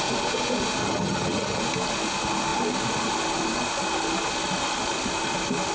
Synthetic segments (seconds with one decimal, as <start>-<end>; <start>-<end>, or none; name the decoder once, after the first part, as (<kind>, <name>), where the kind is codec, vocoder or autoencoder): 0.8-1.6 (vocoder, HiFi-GAN)